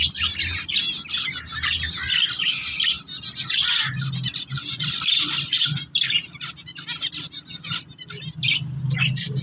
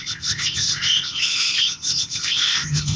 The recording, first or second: first